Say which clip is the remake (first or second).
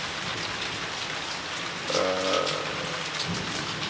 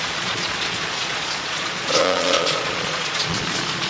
second